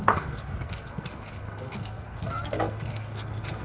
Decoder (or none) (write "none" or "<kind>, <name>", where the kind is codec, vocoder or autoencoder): codec, SNAC